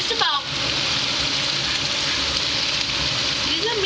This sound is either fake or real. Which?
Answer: real